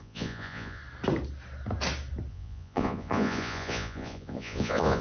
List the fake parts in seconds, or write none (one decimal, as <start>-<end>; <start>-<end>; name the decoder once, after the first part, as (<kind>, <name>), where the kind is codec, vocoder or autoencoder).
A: 0.0-0.8 (vocoder, Vocos); 2.3-5.0